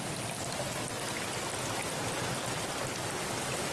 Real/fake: real